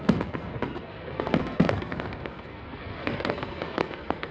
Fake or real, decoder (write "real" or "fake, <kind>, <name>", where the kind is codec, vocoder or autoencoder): fake, codec, SNAC